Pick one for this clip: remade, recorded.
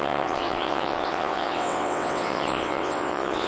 remade